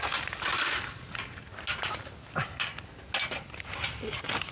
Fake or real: real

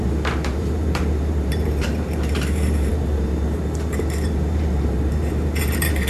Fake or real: fake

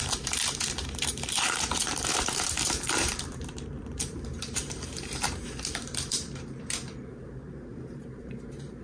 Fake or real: fake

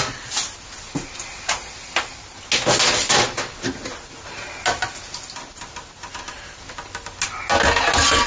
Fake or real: real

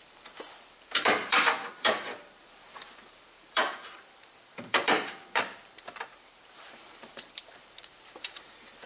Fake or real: fake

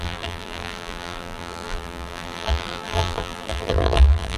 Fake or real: fake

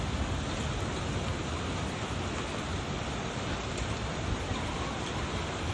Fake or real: real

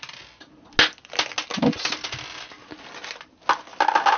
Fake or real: real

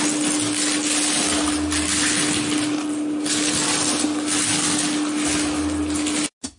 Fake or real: real